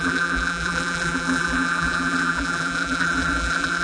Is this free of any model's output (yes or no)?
no